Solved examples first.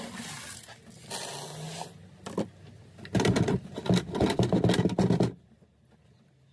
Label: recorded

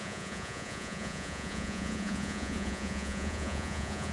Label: remade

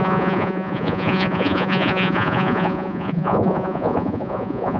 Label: remade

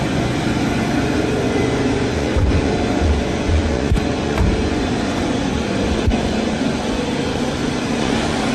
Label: remade